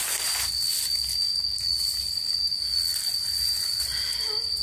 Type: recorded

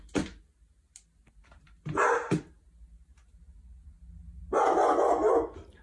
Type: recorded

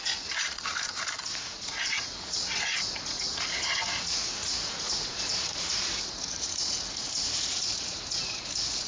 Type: remade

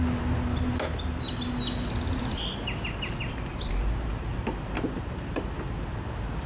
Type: recorded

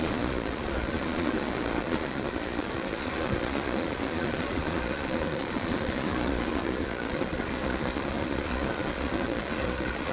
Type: remade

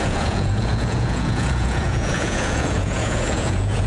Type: remade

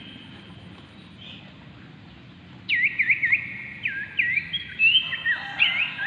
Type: recorded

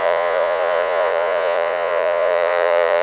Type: remade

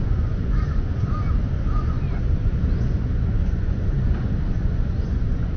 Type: remade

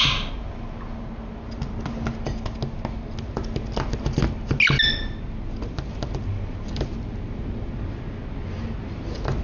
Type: recorded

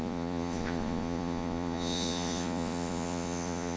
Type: remade